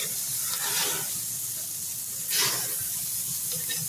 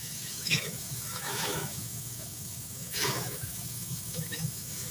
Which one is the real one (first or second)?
first